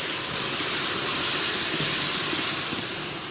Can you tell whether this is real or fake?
real